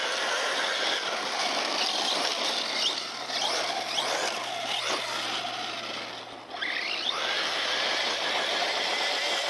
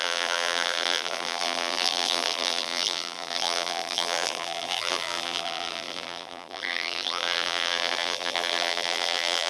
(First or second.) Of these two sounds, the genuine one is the first